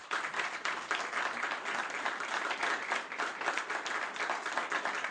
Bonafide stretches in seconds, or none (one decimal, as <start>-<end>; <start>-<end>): 0.0-2.6; 3.7-5.1